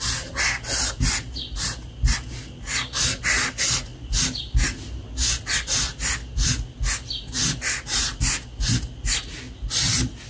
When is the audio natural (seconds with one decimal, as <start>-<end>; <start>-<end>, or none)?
0.0-10.3